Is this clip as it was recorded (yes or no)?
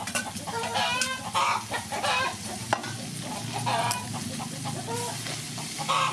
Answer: yes